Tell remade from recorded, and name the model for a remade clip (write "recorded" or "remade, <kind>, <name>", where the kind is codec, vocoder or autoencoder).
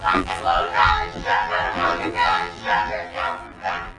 remade, vocoder, BigVGAN v2